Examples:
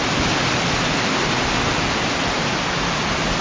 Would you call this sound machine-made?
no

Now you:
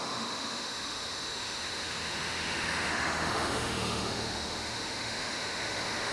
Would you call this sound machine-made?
yes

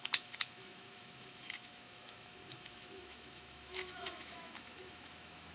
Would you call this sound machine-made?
yes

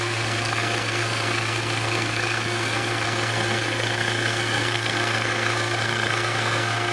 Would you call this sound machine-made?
yes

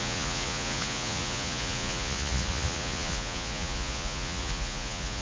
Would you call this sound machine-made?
yes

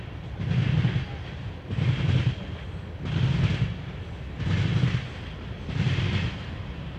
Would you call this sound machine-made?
no